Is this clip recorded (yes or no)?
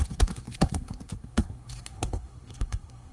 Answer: no